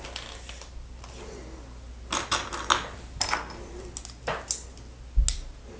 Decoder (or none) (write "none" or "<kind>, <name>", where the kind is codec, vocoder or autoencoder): none